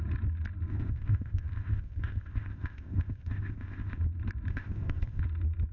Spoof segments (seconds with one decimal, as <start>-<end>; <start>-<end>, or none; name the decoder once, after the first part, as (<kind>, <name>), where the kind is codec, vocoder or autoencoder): 0.7-4.0 (codec, ZipCodec); 4.5-5.2